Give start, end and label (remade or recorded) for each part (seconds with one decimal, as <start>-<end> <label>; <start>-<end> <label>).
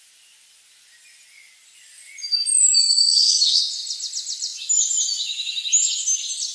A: 0.0-2.8 recorded; 2.8-3.6 remade; 3.6-6.5 recorded